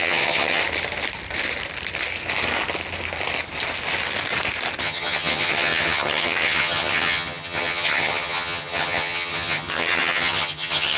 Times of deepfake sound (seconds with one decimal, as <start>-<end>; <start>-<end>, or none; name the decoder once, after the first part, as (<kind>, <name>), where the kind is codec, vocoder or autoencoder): 0.0-0.6 (vocoder, HiFi-GAN); 4.8-11.0